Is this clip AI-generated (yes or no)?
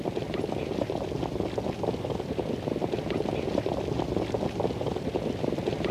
no